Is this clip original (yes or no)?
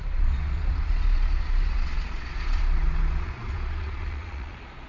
no